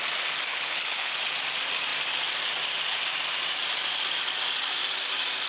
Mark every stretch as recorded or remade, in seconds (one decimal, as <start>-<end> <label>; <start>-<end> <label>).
0.0-0.5 recorded; 0.5-1.1 remade; 1.1-5.5 recorded